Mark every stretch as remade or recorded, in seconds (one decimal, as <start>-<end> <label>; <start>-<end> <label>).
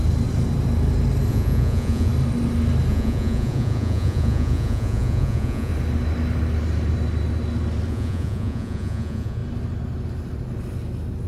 0.0-1.3 recorded; 1.3-2.1 remade; 2.1-2.9 recorded; 2.9-5.7 remade; 5.7-7.9 recorded; 7.9-9.4 remade; 9.4-11.3 recorded